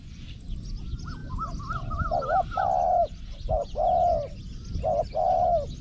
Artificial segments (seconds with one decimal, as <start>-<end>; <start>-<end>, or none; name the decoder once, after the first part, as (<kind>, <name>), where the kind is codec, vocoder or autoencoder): none